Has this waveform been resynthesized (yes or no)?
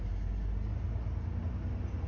no